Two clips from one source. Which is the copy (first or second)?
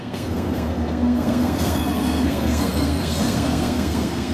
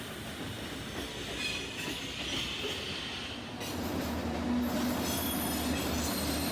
first